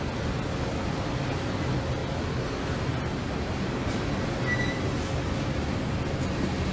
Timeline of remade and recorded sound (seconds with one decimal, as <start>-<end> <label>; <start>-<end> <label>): 0.0-6.7 recorded